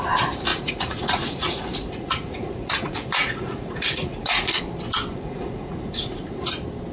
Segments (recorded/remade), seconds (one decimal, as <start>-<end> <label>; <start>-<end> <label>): 0.0-0.5 recorded; 0.5-4.6 remade; 4.6-5.1 recorded; 5.1-6.5 remade; 6.5-6.9 recorded